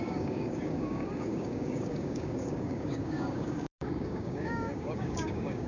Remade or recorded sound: remade